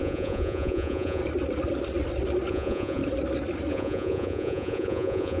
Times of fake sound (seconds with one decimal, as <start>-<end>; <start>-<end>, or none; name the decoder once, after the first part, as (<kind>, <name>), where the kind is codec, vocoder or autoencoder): 0.0-1.2 (vocoder, Vocos); 2.5-3.0; 3.7-5.4